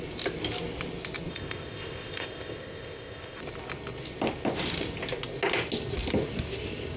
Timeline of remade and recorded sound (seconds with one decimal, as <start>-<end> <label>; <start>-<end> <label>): 0.0-1.3 recorded; 1.3-3.4 remade; 3.4-7.0 recorded

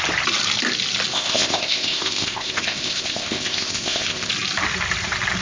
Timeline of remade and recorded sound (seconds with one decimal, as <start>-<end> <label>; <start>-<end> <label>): 0.0-1.1 recorded; 1.1-4.3 remade; 4.3-5.4 recorded

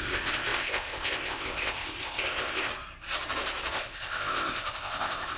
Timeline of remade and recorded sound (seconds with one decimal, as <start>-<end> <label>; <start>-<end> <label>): 0.0-2.7 remade; 2.7-3.7 recorded; 3.7-5.4 remade

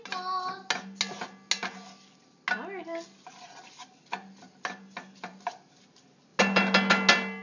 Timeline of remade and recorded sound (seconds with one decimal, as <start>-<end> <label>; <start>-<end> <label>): 0.0-7.4 recorded

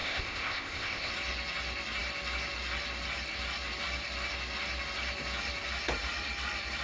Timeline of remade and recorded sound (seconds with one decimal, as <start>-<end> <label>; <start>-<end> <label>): 0.0-1.1 remade; 1.1-6.8 recorded

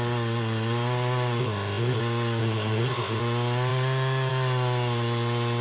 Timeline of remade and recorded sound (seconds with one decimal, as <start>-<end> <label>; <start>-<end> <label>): 0.0-1.4 recorded; 1.4-2.0 remade; 2.0-2.4 recorded; 2.4-3.2 remade; 3.2-5.6 recorded

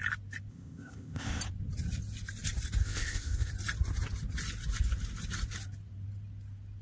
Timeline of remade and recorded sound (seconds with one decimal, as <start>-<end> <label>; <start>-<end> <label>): 0.0-0.5 recorded; 0.5-1.4 remade; 1.4-2.8 recorded; 2.8-3.5 remade; 3.5-6.8 recorded

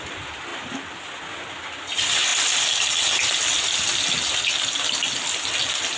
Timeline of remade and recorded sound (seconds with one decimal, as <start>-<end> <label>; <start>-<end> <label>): 0.0-6.0 recorded